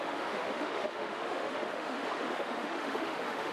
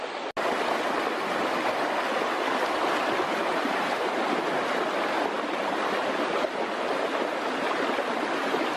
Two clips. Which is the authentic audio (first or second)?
second